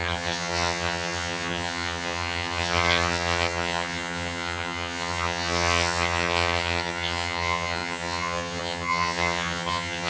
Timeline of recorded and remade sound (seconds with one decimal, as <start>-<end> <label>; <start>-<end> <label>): 0.0-10.1 remade